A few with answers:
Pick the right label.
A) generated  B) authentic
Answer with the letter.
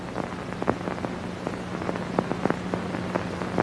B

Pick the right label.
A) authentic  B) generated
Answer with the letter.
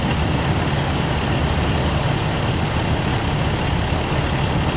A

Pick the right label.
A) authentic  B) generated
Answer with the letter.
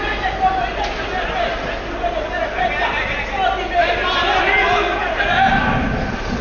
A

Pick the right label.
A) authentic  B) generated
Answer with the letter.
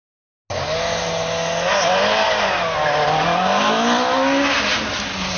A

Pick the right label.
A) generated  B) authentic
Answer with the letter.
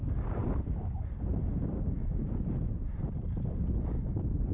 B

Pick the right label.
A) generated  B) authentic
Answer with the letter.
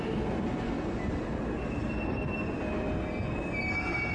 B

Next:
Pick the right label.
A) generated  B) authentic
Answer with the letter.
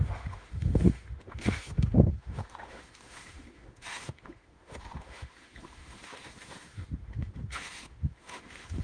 A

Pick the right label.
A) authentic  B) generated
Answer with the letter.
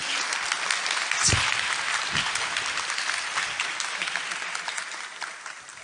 A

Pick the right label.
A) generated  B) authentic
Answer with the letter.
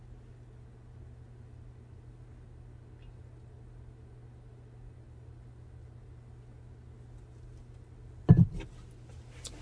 B